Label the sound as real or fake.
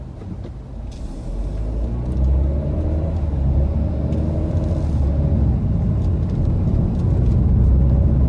real